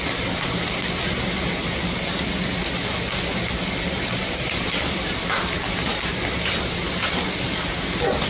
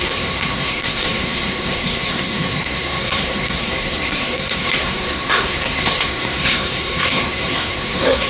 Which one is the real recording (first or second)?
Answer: first